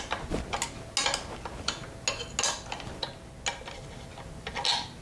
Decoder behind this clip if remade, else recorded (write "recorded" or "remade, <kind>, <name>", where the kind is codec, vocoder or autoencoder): recorded